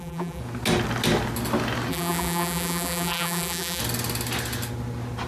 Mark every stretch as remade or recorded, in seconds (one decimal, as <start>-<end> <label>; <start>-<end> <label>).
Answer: 0.0-0.4 remade; 0.4-1.9 recorded; 1.9-3.8 remade; 3.8-5.3 recorded